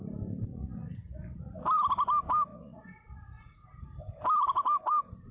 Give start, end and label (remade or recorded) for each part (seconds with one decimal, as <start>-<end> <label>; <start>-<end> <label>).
0.0-0.5 recorded; 0.5-1.6 remade; 1.6-2.5 recorded; 2.5-4.0 remade; 4.0-5.3 recorded